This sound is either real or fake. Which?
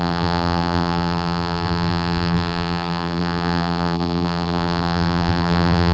fake